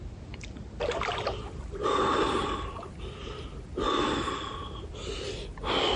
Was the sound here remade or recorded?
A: recorded